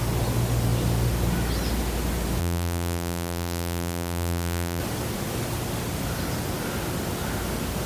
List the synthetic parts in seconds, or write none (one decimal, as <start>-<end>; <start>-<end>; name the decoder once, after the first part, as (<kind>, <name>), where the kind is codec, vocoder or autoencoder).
2.4-4.8 (vocoder, BigVGAN v2)

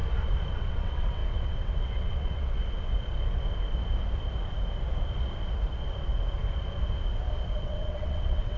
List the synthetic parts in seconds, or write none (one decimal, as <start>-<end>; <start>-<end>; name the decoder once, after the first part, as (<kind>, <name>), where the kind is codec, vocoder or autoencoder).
0.5-2.6 (vocoder, WaveNeXt); 7.6-8.6

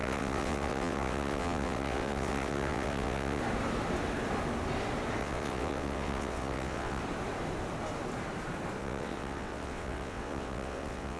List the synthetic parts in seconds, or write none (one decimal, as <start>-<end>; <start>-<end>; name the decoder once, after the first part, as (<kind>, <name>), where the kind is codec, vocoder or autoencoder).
0.0-3.4 (vocoder, WaveNeXt); 5.2-7.0; 8.8-11.2